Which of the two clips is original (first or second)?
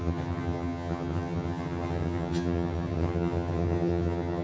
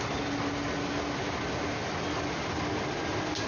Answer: second